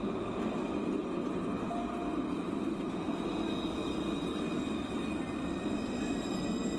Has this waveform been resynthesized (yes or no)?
no